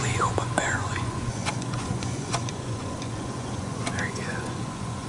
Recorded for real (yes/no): no